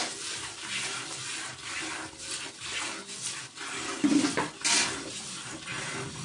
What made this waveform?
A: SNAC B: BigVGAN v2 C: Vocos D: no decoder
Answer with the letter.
D